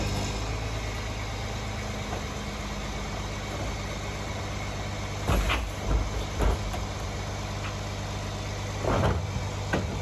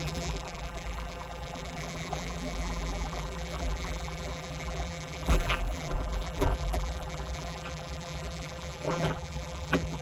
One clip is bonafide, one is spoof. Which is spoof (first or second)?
second